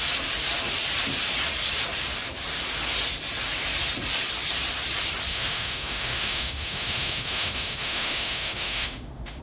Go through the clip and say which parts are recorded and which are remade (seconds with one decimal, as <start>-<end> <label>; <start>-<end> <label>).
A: 0.0-5.3 recorded; 5.3-9.4 remade